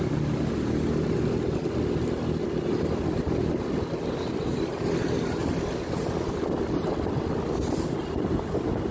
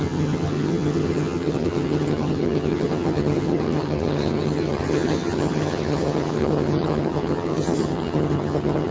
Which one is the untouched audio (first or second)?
first